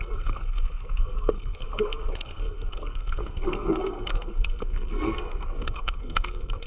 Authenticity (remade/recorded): remade